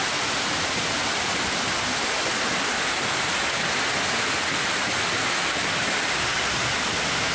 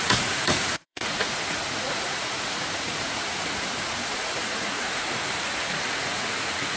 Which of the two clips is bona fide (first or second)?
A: first